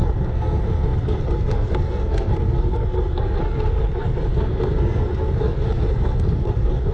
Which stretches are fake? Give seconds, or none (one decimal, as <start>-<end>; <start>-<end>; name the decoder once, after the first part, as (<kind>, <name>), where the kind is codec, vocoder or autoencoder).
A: 0.0-6.9 (codec, SNAC)